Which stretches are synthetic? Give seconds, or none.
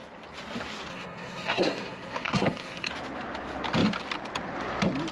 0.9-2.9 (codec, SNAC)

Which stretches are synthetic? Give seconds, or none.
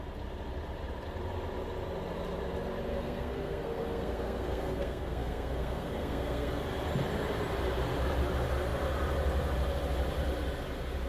2.9-6.6 (codec, SNAC)